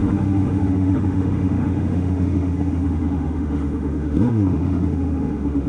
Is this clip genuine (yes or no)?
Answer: no